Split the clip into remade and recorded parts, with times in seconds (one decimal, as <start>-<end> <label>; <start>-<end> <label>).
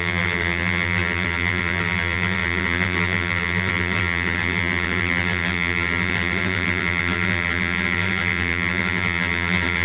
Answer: 0.0-9.8 remade